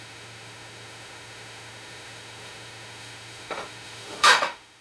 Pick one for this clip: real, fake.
fake